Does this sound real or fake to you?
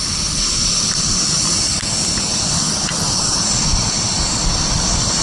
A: real